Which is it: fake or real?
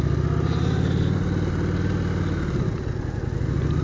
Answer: real